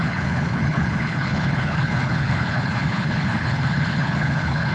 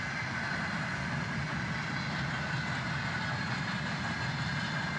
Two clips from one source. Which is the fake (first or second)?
first